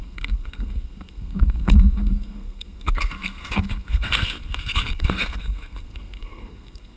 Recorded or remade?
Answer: remade